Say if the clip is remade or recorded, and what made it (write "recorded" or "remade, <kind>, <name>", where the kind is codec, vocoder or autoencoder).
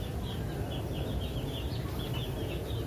recorded